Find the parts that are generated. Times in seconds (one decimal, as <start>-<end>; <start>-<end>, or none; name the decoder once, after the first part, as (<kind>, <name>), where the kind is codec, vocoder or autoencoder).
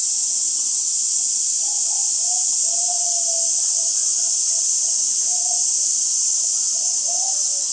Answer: 4.6-7.7 (vocoder, BigVGAN v2)